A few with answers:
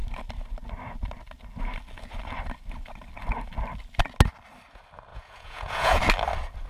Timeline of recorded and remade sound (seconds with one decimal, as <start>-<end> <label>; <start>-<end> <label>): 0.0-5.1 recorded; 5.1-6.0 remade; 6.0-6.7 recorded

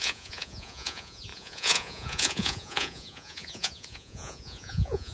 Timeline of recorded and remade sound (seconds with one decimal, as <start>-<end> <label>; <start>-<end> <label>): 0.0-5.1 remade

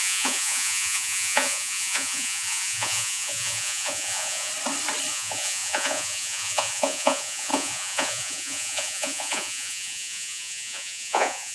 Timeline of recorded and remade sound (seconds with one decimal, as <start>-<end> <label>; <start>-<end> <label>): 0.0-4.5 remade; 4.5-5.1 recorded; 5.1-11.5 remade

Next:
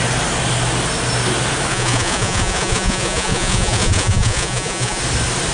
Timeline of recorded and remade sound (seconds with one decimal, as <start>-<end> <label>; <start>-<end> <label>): 0.0-1.7 recorded; 1.7-5.0 remade; 5.0-5.5 recorded